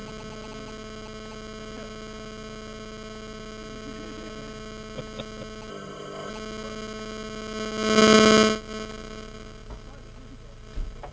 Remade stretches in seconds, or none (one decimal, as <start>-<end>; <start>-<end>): 5.7-6.3